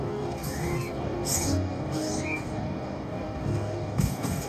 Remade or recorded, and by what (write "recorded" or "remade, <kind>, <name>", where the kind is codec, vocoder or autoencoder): remade, codec, DAC